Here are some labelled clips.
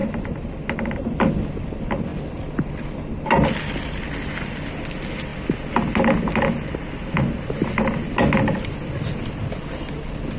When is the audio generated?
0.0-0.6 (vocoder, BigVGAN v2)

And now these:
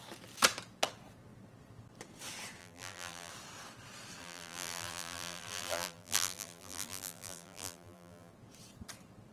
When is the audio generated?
2.6-3.3 (vocoder, BigVGAN v2); 4.2-8.3